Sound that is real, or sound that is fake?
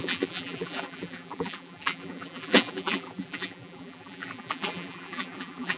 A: fake